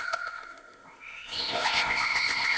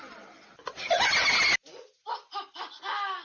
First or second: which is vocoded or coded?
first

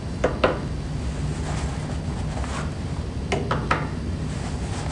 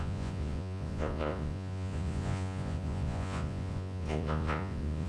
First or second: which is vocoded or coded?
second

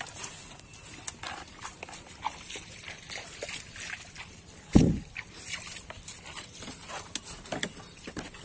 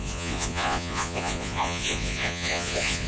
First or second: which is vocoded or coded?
second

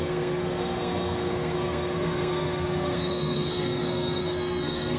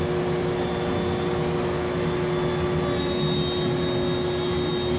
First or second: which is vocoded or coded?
first